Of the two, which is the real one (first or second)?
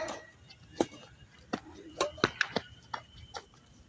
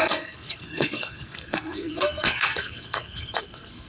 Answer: first